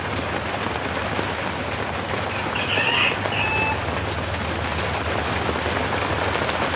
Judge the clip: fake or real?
real